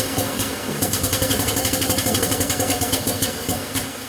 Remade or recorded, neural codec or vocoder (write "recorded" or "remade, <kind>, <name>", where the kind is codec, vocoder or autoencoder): remade, codec, SNAC